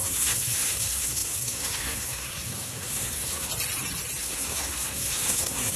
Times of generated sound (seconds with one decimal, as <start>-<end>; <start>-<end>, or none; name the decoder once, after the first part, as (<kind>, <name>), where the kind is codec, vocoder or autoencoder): 0.0-3.5 (codec, SNAC); 4.2-5.8